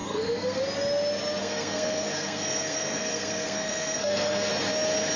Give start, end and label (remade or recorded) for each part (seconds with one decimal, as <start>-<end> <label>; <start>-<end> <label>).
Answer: 0.0-0.6 remade; 0.6-1.4 recorded; 1.4-4.5 remade; 4.5-5.2 recorded